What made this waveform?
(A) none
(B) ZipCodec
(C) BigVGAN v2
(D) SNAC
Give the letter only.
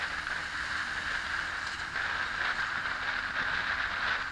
A